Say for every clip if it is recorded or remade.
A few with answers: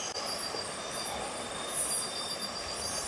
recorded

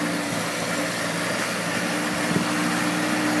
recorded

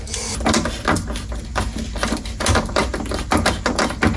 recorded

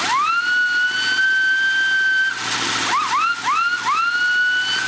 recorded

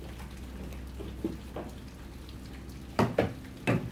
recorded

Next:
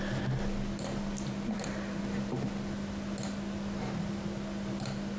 recorded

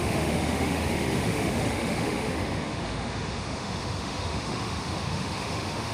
remade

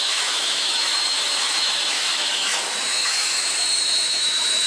remade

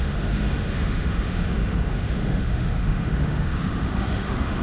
remade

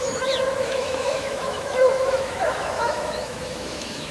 remade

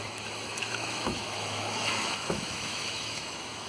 remade